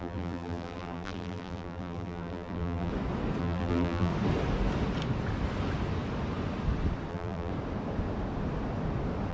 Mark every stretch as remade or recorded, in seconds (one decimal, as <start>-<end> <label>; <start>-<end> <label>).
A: 0.0-2.9 remade; 2.9-3.4 recorded; 3.4-4.1 remade; 4.1-7.1 recorded; 7.1-7.5 remade; 7.5-9.3 recorded